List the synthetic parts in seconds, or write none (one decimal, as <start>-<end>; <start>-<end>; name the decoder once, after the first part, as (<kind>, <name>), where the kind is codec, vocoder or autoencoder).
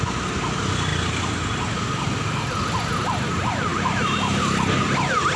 3.7-4.4 (vocoder, BigVGAN v2)